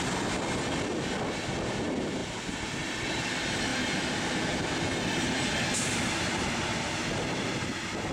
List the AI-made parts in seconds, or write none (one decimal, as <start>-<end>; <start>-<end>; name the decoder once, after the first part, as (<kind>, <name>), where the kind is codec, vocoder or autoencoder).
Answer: none